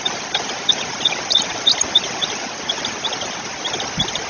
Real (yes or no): yes